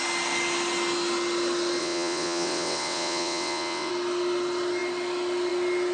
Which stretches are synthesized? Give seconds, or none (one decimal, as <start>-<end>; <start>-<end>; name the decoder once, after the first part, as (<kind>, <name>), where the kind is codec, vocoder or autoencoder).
1.8-3.9 (vocoder, WaveNeXt)